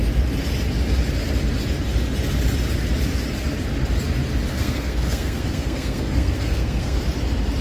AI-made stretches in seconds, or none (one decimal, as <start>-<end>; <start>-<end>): 4.5-7.0